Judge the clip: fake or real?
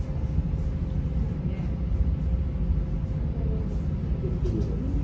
real